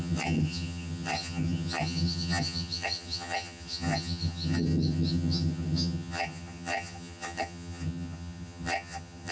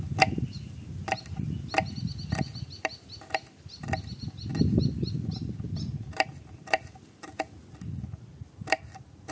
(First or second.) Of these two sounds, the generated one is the first